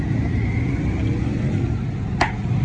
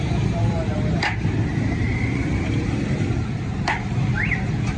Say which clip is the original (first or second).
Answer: first